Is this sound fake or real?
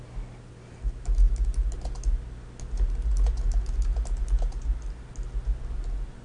real